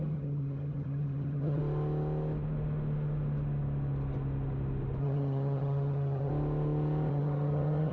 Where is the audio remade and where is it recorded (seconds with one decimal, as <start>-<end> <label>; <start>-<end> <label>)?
0.0-1.6 remade; 1.6-5.0 recorded; 5.0-6.3 remade; 6.3-7.1 recorded; 7.1-7.9 remade